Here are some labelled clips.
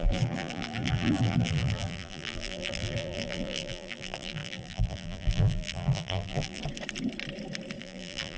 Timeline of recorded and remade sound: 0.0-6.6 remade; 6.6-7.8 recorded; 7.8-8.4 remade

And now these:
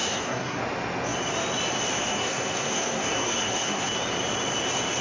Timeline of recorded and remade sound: 0.0-0.6 remade; 0.6-2.1 recorded; 2.1-3.9 remade; 3.9-5.0 recorded

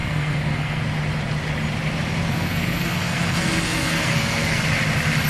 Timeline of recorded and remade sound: 0.0-0.8 remade; 0.8-2.3 recorded; 2.3-4.6 remade; 4.6-5.3 recorded

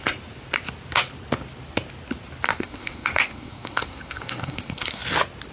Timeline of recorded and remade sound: 0.0-2.5 recorded; 2.5-5.0 remade; 5.0-5.5 recorded